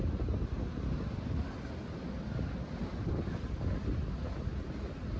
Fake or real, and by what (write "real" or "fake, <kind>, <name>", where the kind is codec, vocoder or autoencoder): real